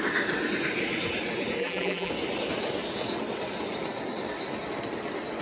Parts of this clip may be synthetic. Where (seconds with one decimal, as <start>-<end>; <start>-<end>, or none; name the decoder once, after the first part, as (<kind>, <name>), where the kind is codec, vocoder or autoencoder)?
1.6-2.1 (vocoder, BigVGAN v2)